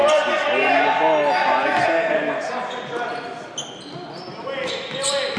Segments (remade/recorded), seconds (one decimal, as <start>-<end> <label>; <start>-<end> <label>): 0.0-1.9 recorded; 1.9-2.5 remade; 2.5-5.4 recorded